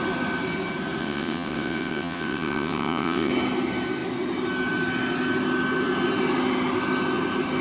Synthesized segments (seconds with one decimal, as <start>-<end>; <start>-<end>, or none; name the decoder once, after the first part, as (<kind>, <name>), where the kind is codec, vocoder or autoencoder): 1.0-3.3 (vocoder, WaveNeXt)